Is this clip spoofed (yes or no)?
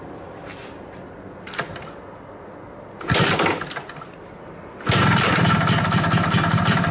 no